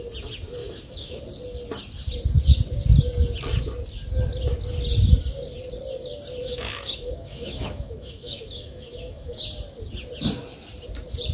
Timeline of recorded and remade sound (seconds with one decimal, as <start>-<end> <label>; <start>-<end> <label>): 0.0-0.6 recorded; 0.6-1.2 remade; 1.2-6.4 recorded; 6.4-9.4 remade; 9.4-11.3 recorded